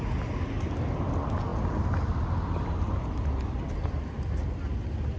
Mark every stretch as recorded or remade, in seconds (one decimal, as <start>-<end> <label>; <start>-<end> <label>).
0.0-1.5 recorded; 1.5-4.2 remade; 4.2-5.2 recorded